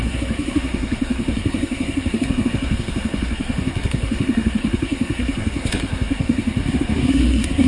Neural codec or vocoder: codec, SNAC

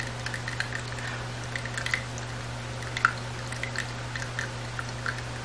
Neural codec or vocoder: none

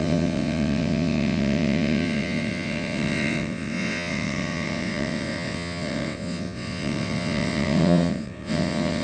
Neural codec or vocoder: vocoder, WaveNeXt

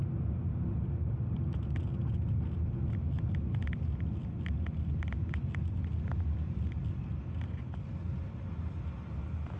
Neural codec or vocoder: none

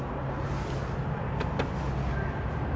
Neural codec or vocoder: none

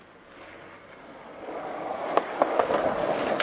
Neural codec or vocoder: none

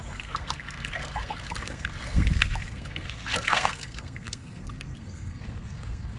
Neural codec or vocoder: codec, SNAC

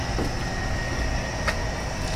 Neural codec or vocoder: none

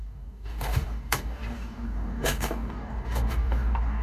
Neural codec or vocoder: codec, DAC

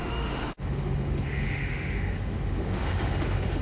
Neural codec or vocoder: autoencoder, DAC-VAE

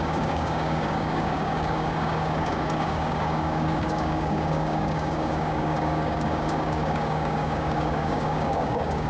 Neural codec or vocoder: codec, DAC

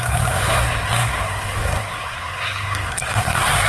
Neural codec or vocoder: codec, SNAC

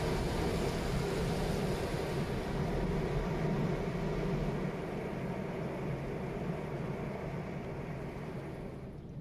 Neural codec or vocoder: none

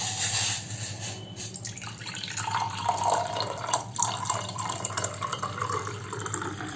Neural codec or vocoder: none